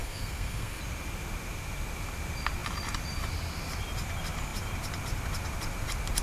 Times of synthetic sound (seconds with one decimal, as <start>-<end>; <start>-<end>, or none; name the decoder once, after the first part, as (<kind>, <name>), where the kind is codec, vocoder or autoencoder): 0.0-0.8 (codec, SNAC)